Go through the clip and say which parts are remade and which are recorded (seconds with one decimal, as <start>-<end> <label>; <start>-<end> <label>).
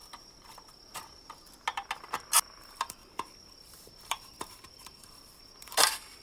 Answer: 0.0-3.0 recorded; 3.0-5.3 remade; 5.3-6.2 recorded